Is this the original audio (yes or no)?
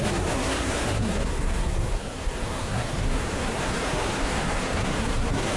no